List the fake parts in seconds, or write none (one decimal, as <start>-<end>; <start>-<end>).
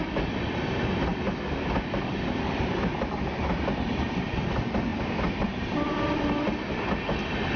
4.9-6.9